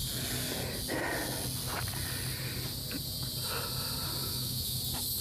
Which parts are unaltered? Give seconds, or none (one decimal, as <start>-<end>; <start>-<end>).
0.0-4.2; 4.8-5.2